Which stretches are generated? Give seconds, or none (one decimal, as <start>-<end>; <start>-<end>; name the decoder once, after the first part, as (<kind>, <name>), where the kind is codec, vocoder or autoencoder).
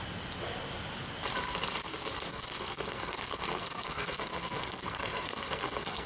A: 2.3-6.1 (codec, SNAC)